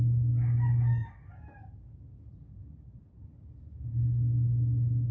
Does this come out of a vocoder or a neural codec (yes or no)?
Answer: no